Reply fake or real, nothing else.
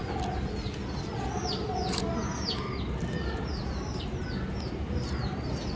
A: real